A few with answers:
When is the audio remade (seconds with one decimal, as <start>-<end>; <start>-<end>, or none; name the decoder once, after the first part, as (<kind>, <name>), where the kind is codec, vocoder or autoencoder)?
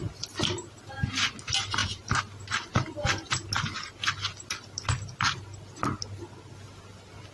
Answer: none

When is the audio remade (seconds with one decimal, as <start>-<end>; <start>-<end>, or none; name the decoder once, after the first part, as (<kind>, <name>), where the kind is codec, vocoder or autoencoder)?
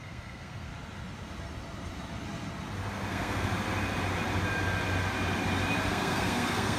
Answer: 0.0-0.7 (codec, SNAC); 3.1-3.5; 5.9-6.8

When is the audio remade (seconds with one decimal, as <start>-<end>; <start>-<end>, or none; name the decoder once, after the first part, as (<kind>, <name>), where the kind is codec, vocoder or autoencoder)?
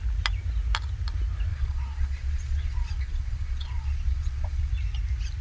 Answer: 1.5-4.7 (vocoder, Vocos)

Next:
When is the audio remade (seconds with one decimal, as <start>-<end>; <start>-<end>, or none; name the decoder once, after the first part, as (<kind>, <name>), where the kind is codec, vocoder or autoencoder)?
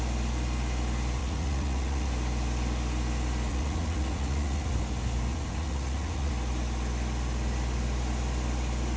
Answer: 1.2-2.1 (vocoder, Vocos); 3.5-4.7; 5.3-6.3